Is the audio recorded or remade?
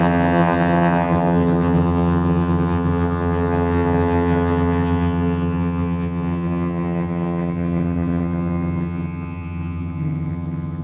remade